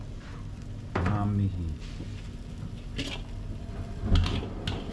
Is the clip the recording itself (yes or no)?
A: yes